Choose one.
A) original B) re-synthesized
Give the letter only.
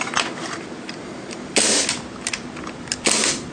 A